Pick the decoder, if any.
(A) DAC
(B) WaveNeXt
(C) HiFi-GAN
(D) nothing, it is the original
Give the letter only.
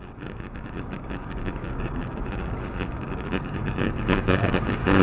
A